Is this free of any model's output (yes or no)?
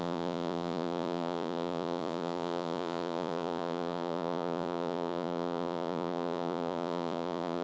no